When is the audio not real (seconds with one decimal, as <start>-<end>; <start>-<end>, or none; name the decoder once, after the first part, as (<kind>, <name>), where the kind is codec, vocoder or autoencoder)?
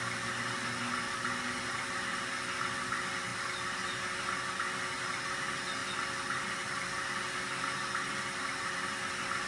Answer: none